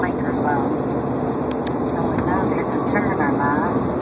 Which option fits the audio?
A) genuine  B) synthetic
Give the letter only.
A